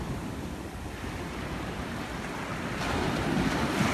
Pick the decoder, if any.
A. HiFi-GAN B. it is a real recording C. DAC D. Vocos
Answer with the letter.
B